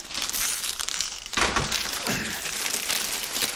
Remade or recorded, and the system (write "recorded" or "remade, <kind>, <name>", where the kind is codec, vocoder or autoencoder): remade, vocoder, BigVGAN v2